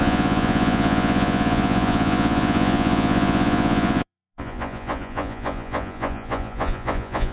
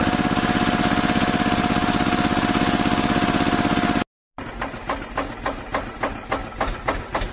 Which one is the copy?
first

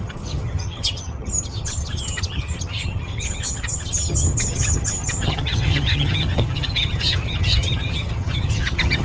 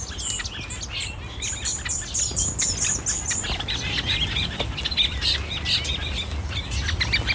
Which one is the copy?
first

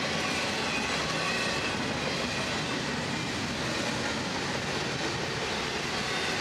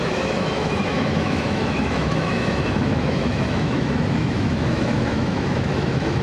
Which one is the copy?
second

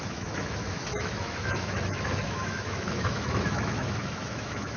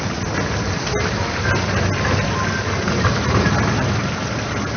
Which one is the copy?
first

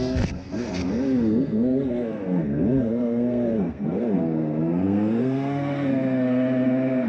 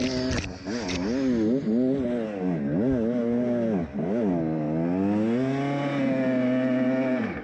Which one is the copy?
first